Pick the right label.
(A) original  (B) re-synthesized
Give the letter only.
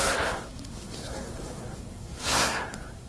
B